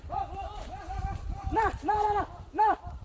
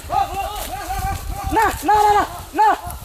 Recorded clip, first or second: second